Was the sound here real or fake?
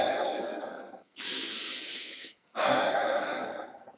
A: fake